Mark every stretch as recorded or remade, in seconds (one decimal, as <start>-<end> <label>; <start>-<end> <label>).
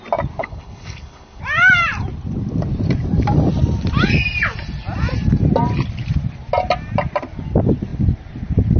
0.0-0.4 recorded; 0.4-1.4 remade; 1.4-8.8 recorded